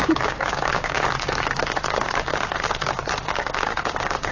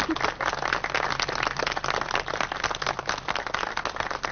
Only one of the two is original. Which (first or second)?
second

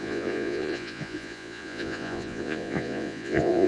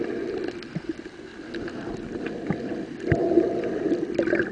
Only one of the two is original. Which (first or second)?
second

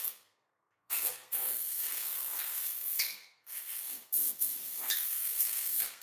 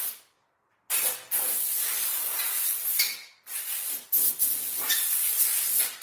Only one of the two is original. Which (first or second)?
second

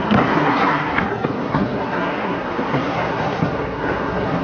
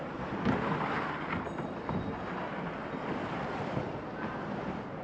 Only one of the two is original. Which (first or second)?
second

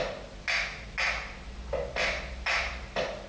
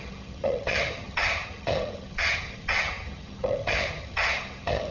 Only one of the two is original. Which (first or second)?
first